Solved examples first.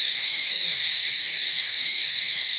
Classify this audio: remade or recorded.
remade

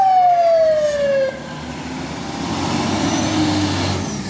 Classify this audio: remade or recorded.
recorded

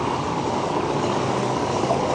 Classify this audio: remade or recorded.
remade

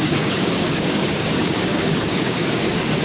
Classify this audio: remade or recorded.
remade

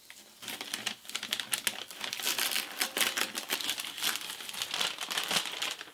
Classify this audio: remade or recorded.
recorded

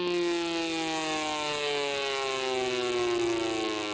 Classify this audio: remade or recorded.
recorded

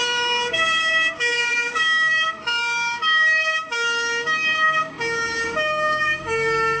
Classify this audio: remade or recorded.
remade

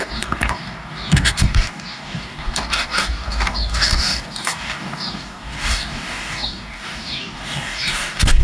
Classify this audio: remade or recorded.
remade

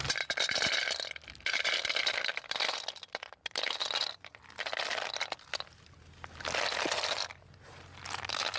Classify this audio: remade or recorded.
recorded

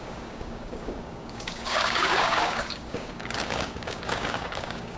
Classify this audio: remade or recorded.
remade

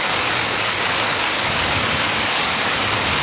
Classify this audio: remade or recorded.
remade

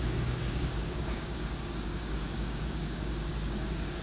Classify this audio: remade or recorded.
remade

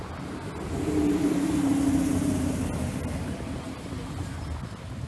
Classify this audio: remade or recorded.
recorded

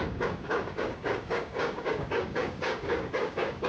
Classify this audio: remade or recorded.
remade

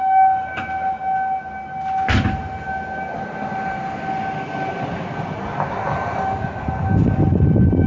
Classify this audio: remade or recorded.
recorded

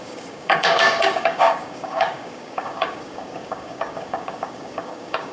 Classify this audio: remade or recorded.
remade